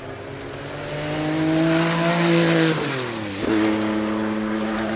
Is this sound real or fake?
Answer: real